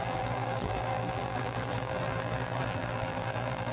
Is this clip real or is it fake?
fake